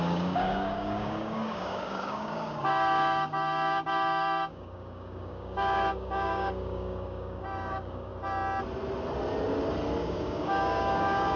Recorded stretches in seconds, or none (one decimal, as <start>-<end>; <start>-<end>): 8.1-10.0